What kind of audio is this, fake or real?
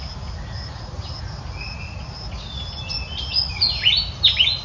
real